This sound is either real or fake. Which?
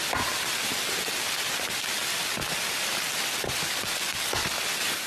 real